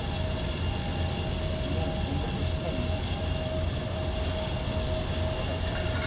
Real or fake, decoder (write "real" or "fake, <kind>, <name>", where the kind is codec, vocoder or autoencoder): real